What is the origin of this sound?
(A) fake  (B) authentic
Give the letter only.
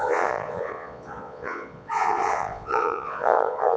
A